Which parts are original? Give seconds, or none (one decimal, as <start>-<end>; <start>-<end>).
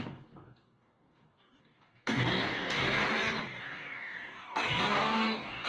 3.0-3.6